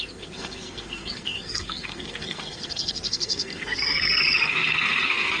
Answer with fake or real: fake